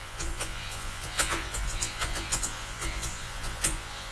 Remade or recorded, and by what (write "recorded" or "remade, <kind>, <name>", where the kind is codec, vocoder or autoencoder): remade, vocoder, Vocos